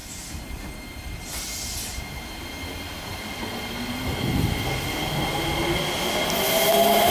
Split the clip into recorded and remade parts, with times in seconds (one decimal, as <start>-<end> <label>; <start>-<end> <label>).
0.0-0.7 remade; 0.7-7.1 recorded